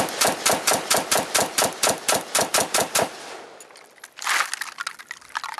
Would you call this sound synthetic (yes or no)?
no